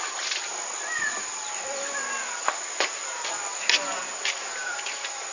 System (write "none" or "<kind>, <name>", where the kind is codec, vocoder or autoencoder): none